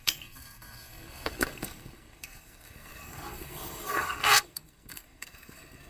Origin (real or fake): fake